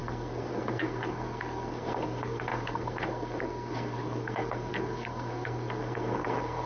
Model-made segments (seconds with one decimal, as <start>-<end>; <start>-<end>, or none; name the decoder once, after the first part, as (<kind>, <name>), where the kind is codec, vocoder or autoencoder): 0.0-6.7 (codec, SNAC)